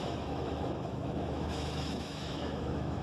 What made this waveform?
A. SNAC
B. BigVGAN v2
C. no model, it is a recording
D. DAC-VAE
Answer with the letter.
D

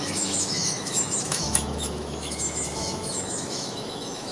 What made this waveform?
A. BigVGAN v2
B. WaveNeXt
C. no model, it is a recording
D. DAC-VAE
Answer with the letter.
D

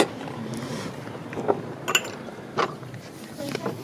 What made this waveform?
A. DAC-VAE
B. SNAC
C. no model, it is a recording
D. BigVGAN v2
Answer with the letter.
C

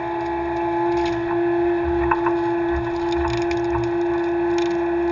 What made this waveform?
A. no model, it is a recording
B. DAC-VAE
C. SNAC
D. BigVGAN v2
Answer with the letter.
A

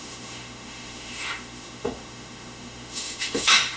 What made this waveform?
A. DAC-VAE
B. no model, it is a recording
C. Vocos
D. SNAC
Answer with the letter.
A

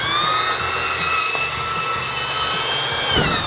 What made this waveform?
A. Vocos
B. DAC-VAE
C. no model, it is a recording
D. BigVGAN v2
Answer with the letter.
C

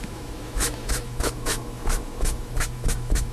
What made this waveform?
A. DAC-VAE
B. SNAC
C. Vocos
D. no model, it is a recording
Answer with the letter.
A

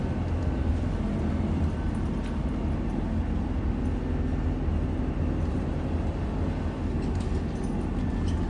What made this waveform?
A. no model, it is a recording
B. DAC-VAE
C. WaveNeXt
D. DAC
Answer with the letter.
A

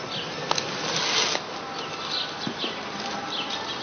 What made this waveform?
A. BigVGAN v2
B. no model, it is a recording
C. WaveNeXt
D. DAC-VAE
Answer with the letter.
B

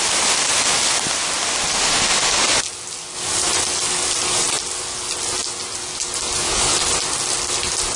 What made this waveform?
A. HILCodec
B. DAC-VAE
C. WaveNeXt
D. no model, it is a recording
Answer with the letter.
D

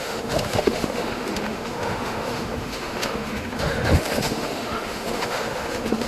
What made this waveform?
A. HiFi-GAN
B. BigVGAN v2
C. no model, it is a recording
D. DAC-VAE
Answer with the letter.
D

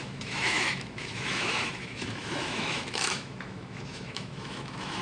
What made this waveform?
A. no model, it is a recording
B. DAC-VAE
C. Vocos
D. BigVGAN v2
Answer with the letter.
B